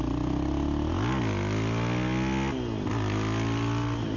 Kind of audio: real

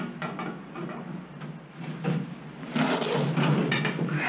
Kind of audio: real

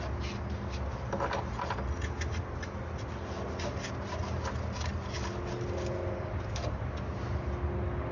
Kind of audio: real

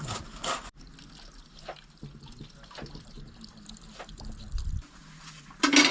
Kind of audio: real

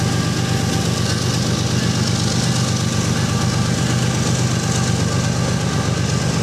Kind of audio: real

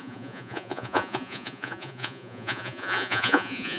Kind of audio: fake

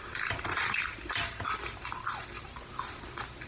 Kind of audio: real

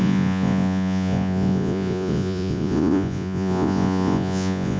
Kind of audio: fake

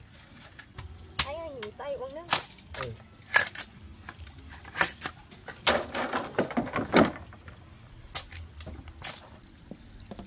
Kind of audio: real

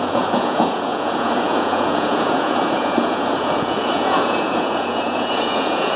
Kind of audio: fake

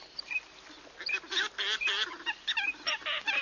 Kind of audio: real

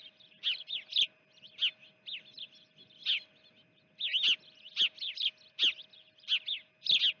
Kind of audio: real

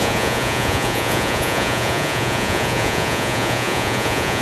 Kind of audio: fake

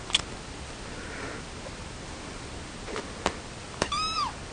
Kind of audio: real